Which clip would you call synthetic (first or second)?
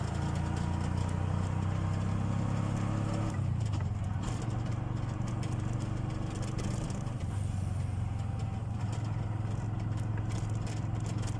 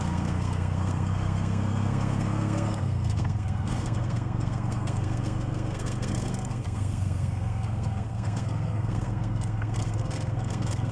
second